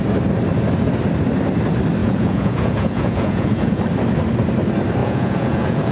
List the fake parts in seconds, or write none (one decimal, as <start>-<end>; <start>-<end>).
2.0-3.8; 5.0-5.9